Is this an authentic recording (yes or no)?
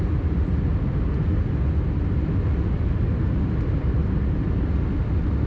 yes